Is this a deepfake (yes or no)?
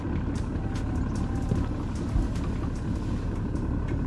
no